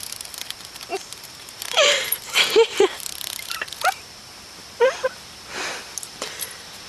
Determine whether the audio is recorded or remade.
remade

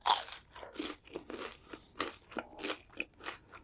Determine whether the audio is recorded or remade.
recorded